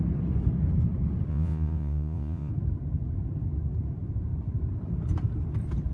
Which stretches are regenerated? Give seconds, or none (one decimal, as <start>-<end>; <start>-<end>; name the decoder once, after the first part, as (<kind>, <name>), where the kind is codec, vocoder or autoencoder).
1.3-2.5 (vocoder, Vocos)